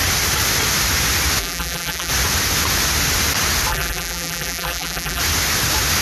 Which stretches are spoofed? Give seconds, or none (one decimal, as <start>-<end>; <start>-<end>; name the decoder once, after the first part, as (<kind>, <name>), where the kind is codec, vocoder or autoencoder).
1.4-2.1 (vocoder, BigVGAN v2); 3.7-5.2